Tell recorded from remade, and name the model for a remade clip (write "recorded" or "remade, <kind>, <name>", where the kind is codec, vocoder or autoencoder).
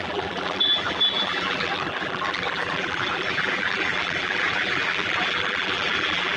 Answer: remade, vocoder, BigVGAN v2